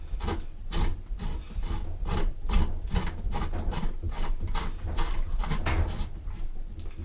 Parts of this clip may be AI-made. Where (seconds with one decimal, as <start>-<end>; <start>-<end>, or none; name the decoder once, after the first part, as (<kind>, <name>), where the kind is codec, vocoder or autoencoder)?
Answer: none